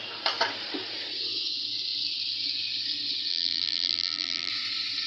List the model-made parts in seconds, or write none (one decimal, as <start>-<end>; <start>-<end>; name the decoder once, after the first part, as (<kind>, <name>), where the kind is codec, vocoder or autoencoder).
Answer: 3.3-4.5 (vocoder, BigVGAN v2)